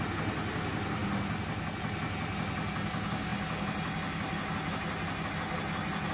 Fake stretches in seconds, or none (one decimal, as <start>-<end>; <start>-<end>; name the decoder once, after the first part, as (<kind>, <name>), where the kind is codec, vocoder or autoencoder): none